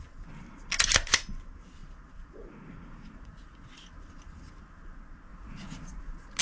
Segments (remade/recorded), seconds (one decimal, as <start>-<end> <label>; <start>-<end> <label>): 0.0-1.8 recorded; 1.8-3.7 remade; 3.7-5.3 recorded; 5.3-6.4 remade